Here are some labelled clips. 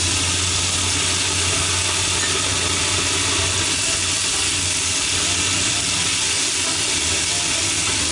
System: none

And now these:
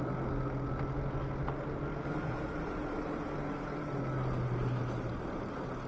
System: none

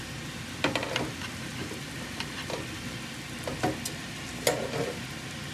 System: none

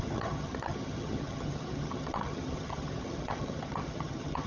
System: vocoder, HiFi-GAN